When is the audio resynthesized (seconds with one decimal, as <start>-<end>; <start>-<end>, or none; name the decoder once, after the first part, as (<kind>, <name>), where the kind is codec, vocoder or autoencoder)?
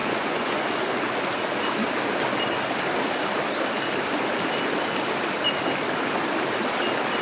0.0-0.6 (vocoder, Vocos)